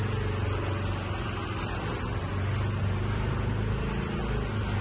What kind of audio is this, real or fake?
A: real